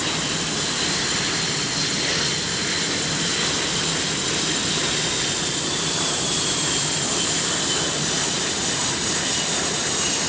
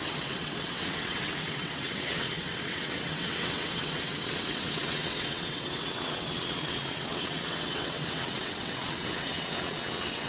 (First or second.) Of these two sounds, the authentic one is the first